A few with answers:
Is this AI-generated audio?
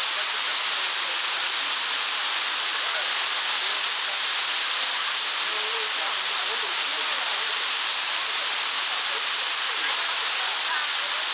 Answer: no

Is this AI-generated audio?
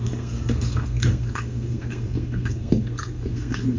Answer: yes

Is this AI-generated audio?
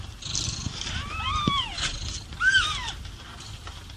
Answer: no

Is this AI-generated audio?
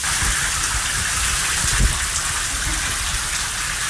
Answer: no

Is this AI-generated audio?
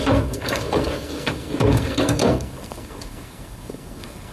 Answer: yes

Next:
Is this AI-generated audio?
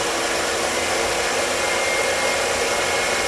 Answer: no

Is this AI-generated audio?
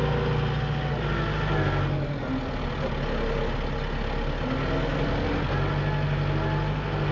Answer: no